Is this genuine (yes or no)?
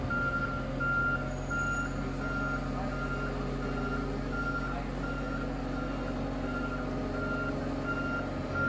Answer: yes